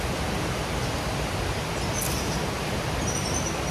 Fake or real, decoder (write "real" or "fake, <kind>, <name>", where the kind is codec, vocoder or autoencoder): real